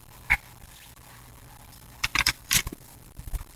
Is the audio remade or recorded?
remade